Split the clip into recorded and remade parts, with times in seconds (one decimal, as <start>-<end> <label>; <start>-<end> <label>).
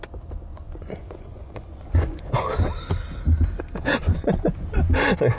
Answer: 0.0-0.5 recorded; 0.5-2.4 remade; 2.4-3.8 recorded; 3.8-4.9 remade; 4.9-5.4 recorded